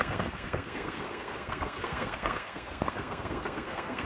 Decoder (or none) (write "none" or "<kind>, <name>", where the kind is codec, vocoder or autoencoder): codec, SNAC